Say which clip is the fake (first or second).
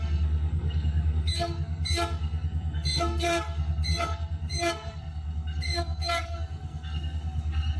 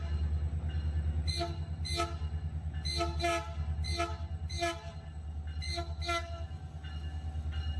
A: first